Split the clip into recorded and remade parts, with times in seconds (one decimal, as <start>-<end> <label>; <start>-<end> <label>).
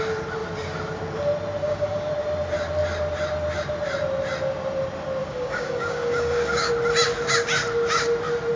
0.0-1.6 recorded; 1.6-2.1 remade; 2.1-5.2 recorded; 5.2-6.7 remade; 6.7-8.6 recorded